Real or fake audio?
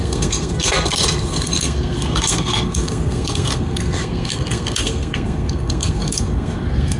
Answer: fake